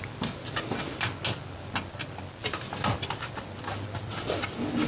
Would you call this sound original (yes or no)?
yes